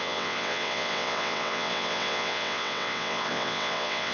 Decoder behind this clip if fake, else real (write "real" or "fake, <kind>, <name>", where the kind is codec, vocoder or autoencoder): fake, vocoder, WaveNeXt